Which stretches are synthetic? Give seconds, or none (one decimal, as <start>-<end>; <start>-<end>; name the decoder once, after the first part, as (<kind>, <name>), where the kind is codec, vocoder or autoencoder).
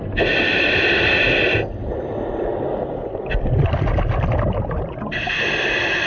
none